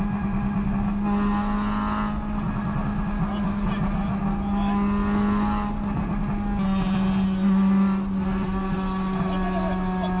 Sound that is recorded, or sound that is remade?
recorded